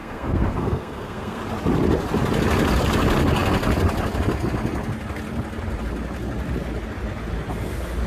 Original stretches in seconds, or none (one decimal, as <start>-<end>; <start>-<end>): 1.4-8.1

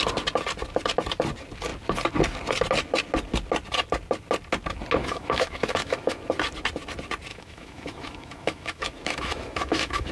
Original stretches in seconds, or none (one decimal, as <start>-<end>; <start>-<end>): 0.0-5.0; 6.2-7.3

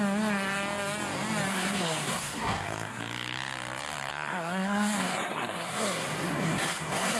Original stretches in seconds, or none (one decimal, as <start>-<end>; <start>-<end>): 0.0-1.5; 3.0-4.1

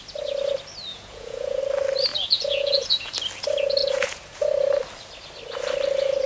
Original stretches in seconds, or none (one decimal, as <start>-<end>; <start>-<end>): 0.0-0.9; 1.6-2.1; 3.1-3.8; 4.4-6.3